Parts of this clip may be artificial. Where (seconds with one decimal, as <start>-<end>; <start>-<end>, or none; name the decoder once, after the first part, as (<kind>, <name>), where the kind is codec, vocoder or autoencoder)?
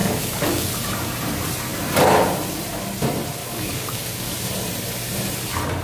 0.0-0.7 (codec, DAC); 3.4-4.5